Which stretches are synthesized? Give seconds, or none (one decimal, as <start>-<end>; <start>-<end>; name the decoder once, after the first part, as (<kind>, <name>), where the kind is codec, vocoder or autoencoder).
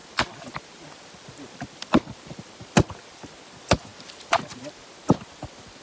none